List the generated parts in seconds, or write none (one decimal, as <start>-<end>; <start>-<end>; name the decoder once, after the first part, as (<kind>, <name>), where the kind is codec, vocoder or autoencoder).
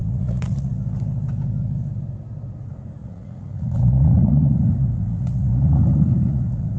0.0-0.7 (vocoder, Vocos); 3.0-6.8